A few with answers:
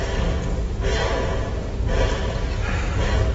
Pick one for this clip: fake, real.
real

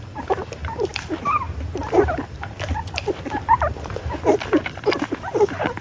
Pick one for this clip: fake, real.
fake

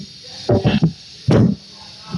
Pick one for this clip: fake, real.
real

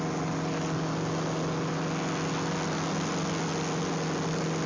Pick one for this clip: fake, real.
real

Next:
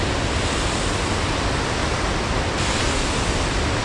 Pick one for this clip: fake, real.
real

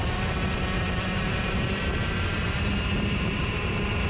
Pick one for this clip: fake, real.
fake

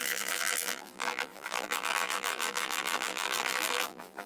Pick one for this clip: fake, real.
fake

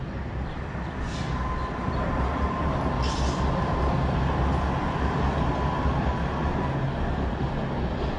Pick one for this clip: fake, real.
real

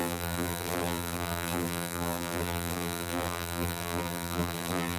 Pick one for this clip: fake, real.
fake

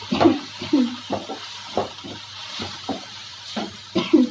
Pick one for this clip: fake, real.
fake